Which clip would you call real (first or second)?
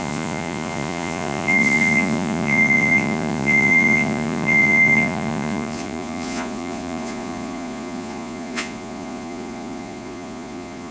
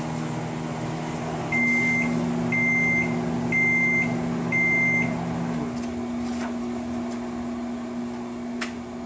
second